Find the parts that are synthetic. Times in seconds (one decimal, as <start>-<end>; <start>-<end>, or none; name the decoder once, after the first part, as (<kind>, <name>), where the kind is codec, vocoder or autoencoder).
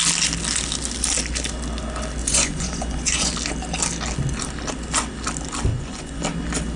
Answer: 2.2-3.3 (vocoder, Vocos); 5.7-6.2